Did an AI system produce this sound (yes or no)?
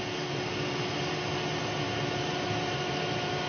no